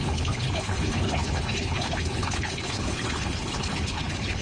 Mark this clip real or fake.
fake